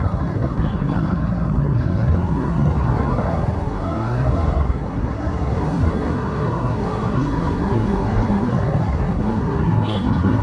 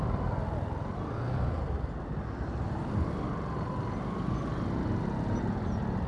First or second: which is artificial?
first